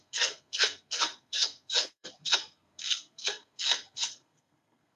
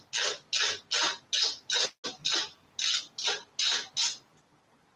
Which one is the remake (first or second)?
first